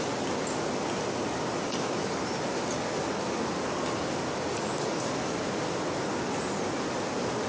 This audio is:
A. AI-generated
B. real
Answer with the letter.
B